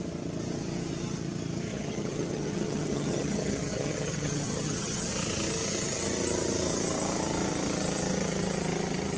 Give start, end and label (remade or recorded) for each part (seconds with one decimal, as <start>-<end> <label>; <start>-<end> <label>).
0.0-1.7 recorded; 1.7-5.0 remade; 5.0-9.2 recorded